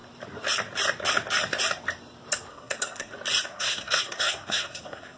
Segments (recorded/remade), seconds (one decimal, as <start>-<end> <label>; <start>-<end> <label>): 0.0-2.5 recorded; 2.5-3.1 remade; 3.1-3.5 recorded; 3.5-5.2 remade